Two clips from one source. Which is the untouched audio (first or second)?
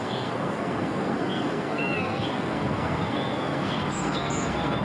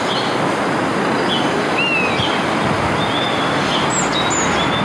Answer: second